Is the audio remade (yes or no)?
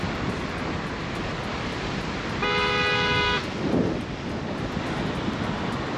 no